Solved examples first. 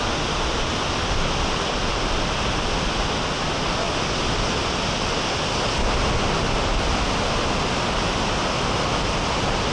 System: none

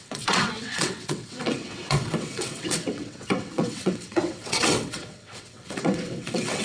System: vocoder, WaveNeXt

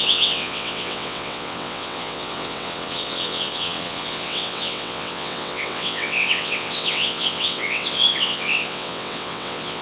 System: vocoder, WaveNeXt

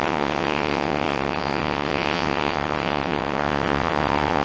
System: vocoder, WaveNeXt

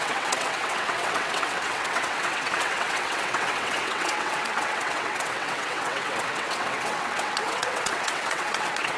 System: vocoder, WaveNeXt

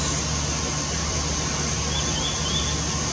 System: none